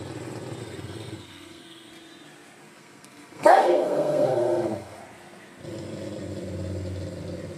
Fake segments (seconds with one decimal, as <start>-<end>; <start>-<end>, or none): 0.6-1.9; 2.6-5.0